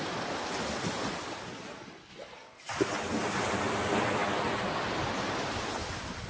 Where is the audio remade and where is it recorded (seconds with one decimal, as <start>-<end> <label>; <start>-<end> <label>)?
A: 0.0-6.3 recorded